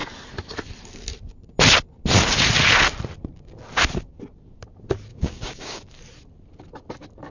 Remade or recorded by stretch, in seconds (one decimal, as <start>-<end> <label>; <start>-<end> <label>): 0.0-5.1 recorded; 5.1-5.8 remade; 5.8-7.3 recorded